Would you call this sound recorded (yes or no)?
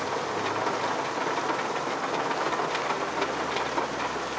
yes